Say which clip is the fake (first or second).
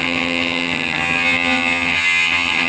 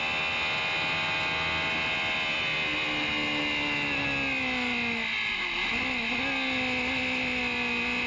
first